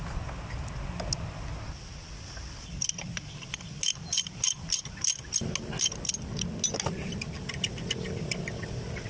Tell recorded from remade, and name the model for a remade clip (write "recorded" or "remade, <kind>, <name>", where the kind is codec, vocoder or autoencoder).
recorded